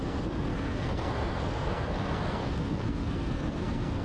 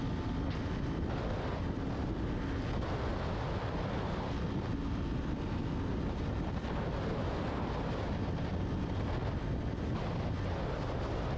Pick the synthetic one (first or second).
first